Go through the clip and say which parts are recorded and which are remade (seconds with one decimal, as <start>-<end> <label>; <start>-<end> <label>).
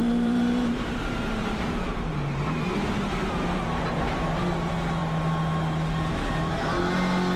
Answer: 0.0-4.4 remade; 4.4-7.4 recorded